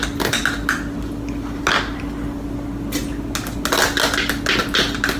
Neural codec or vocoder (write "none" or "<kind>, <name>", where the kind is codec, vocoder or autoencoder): none